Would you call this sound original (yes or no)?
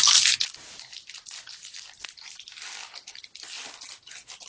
yes